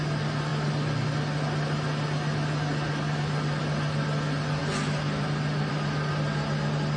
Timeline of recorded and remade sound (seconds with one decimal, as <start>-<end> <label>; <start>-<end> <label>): 0.0-7.0 recorded